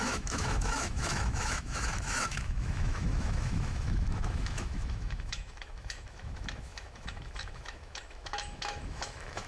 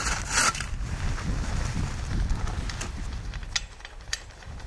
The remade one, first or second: first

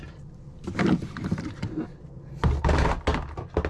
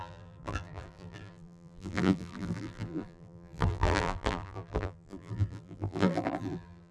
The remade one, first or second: second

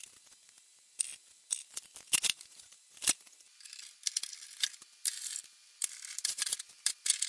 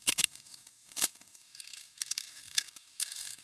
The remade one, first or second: second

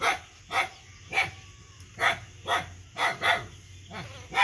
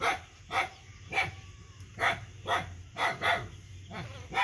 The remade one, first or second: second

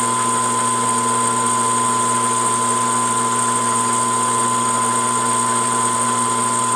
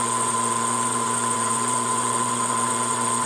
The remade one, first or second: second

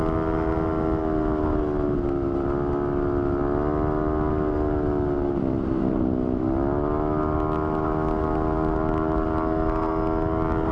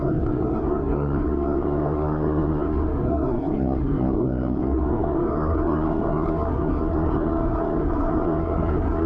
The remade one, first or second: second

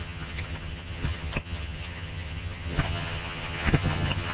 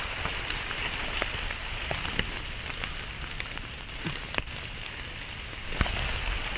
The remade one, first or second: first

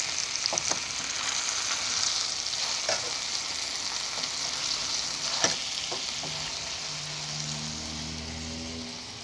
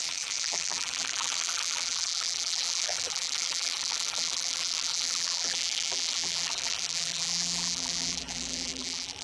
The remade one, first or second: second